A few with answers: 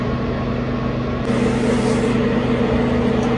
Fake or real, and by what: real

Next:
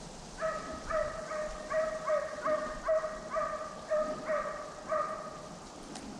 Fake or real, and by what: real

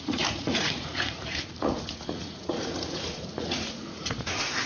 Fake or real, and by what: fake, vocoder, Vocos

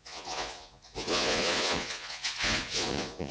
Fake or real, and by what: fake, vocoder, Vocos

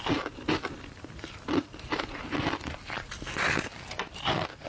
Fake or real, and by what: real